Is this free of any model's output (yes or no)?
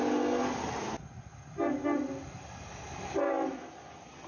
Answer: yes